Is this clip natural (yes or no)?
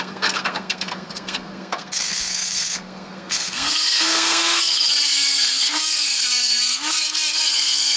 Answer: no